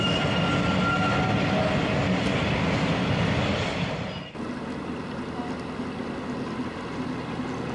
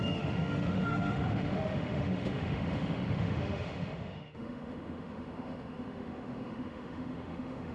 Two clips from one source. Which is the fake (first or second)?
second